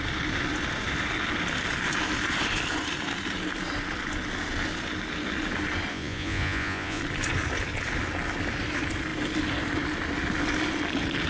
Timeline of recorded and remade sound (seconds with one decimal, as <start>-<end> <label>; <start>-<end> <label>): 0.0-5.9 recorded; 5.9-7.0 remade; 7.0-11.3 recorded